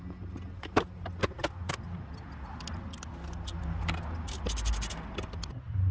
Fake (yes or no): no